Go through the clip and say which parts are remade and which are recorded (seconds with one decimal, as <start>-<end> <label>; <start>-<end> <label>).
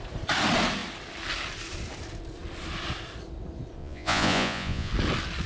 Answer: 0.0-3.8 recorded; 3.8-4.9 remade; 4.9-5.5 recorded